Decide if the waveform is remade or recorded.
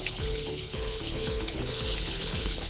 remade